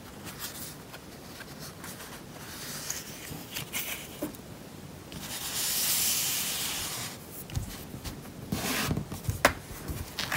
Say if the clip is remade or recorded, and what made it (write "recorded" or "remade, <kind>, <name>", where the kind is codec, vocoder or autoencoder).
recorded